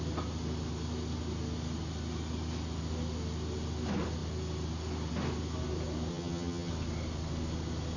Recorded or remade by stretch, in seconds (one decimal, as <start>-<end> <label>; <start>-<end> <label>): 0.0-6.1 recorded; 6.1-6.7 remade; 6.7-8.0 recorded